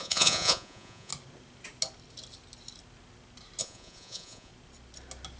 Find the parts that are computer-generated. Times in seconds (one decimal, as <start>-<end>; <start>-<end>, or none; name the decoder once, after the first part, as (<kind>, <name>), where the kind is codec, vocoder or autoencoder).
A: 0.0-1.1 (vocoder, Vocos); 3.6-4.5